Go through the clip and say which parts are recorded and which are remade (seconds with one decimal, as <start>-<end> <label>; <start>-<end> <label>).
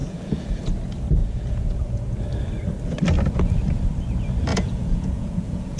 0.0-0.6 remade; 0.6-1.2 recorded; 1.2-2.2 remade; 2.2-4.5 recorded; 4.5-5.8 remade